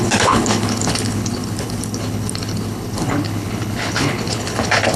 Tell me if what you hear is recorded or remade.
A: remade